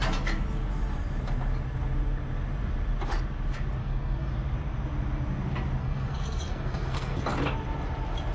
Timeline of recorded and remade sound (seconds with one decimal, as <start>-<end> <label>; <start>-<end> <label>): 0.0-3.8 recorded; 3.8-4.3 remade; 4.3-5.8 recorded; 5.8-7.2 remade; 7.2-8.3 recorded